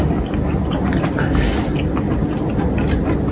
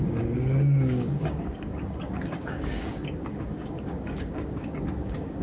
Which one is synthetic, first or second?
second